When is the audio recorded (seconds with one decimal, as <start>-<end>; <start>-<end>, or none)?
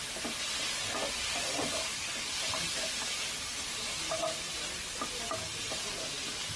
0.0-6.6